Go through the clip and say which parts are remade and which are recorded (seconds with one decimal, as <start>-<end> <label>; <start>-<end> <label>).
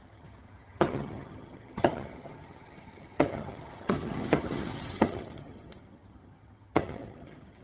0.0-7.6 remade